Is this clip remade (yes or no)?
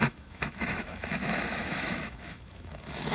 yes